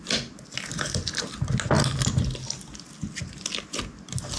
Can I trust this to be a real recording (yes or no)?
yes